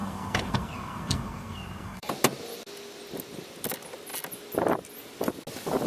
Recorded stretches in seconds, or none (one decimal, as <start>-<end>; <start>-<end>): 2.1-5.9